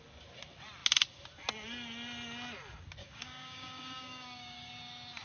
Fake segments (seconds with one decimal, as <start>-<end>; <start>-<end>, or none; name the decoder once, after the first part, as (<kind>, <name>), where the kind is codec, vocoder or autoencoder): 3.0-4.7 (codec, DAC)